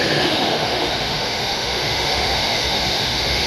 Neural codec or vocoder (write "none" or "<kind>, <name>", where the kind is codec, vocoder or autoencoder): autoencoder, DAC-VAE